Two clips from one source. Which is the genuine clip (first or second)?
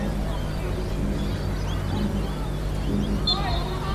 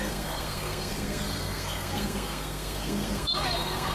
first